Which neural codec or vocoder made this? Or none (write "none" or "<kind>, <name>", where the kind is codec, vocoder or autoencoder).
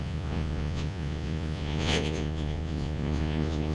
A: vocoder, Vocos